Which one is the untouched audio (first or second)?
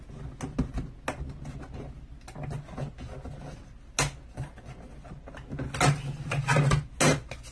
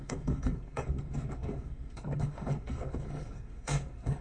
first